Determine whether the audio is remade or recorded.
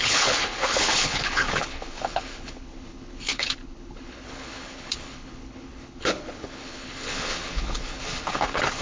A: remade